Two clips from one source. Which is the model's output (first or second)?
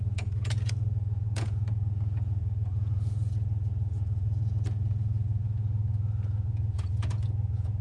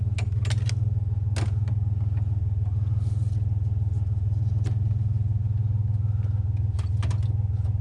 first